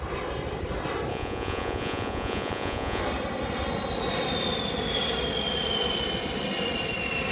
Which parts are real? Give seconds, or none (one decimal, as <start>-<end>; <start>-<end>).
0.0-1.1; 3.0-7.3